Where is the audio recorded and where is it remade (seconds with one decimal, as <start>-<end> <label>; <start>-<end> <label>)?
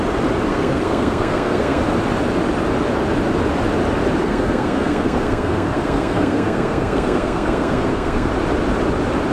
0.0-0.5 recorded; 0.5-1.8 remade; 1.8-4.2 recorded; 4.2-8.3 remade; 8.3-9.3 recorded